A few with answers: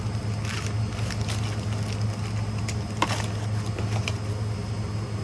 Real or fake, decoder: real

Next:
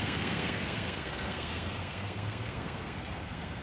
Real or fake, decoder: fake, codec, SNAC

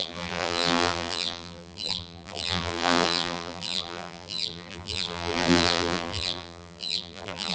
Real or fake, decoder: fake, vocoder, BigVGAN v2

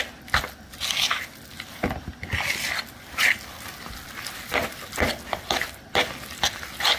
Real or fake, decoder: real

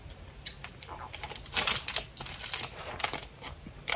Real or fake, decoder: real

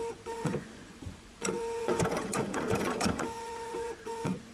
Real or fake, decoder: fake, vocoder, Vocos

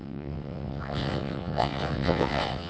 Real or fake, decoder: fake, vocoder, WaveNeXt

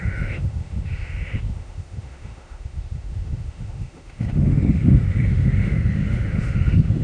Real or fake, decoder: fake, autoencoder, DAC-VAE